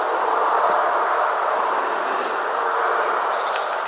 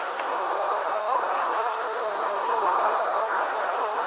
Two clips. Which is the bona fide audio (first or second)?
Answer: first